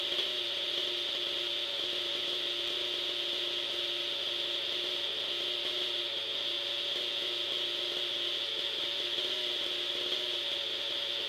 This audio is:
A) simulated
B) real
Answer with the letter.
B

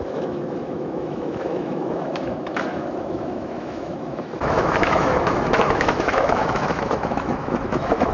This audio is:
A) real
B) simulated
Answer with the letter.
B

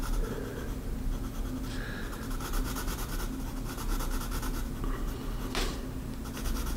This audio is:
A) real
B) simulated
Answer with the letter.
A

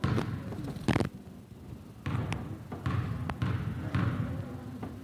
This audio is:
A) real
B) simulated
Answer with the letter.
A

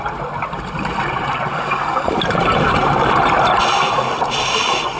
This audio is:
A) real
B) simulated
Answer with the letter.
B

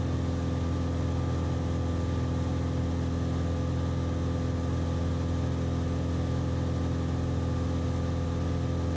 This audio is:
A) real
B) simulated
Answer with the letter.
A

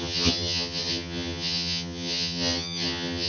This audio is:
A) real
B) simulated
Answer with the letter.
B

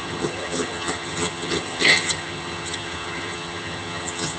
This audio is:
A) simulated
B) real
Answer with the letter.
A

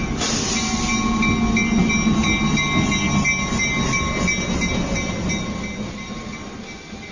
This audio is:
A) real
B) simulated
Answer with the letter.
A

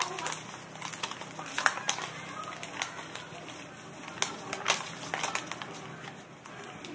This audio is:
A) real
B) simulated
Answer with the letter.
A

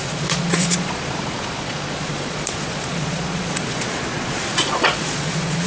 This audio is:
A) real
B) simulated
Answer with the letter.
B